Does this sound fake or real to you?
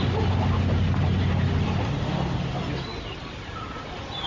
real